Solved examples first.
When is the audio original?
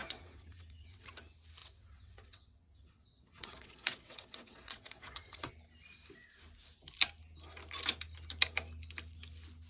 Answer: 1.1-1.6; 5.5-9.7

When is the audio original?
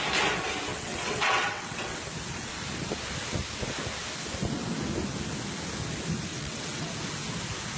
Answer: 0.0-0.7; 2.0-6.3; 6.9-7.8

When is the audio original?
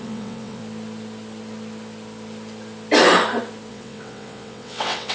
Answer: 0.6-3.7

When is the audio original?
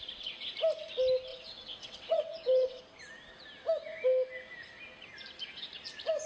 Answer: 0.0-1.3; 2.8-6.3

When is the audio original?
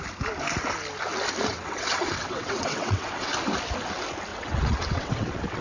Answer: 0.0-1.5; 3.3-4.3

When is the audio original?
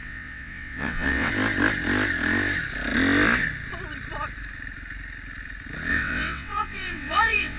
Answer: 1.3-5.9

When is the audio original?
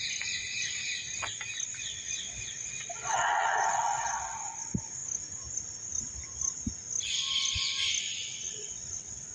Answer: 0.0-1.8; 4.4-8.2